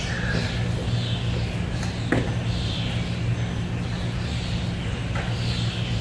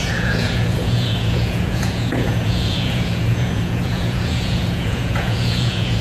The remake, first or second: second